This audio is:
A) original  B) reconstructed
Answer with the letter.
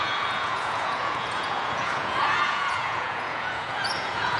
B